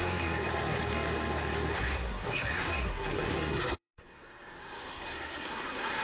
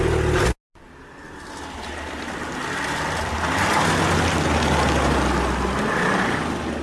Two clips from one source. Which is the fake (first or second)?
first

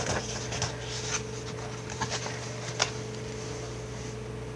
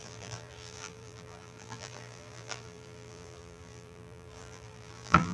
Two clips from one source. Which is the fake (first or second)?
second